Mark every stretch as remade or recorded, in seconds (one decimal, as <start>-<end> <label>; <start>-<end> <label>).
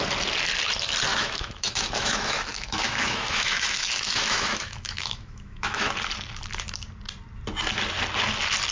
0.0-1.1 recorded; 1.1-5.9 remade; 5.9-8.7 recorded